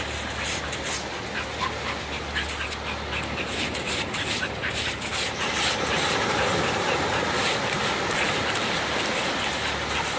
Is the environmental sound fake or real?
real